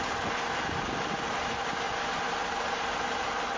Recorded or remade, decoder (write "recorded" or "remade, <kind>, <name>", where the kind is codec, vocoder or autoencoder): recorded